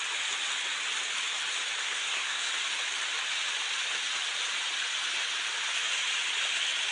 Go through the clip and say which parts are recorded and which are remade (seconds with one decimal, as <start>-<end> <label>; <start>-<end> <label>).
0.0-1.8 recorded; 1.8-2.5 remade; 2.5-6.9 recorded